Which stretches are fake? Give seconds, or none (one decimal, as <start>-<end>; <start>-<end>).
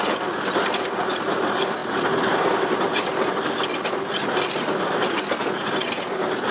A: none